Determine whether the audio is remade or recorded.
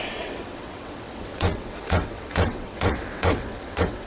remade